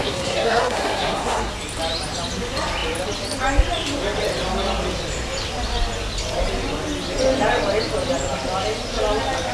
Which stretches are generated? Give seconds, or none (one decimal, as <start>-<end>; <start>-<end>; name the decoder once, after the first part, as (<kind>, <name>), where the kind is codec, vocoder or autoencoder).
0.0-1.5 (codec, SNAC)